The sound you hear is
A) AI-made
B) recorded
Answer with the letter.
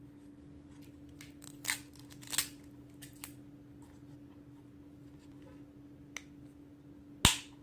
B